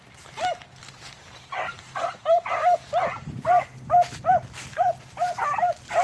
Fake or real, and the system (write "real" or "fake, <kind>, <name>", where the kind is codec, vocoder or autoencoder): real